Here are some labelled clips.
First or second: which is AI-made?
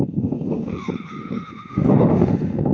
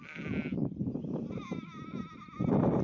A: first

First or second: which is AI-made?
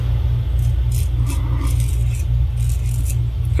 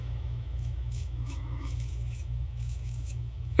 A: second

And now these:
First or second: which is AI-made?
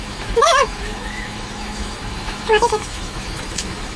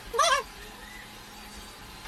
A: first